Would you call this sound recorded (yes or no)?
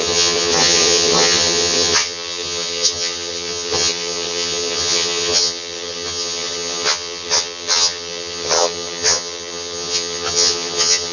no